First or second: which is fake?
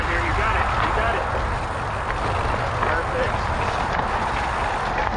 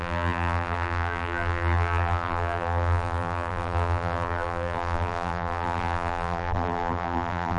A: second